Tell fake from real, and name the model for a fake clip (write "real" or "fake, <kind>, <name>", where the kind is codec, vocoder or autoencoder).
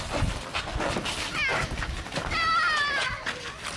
real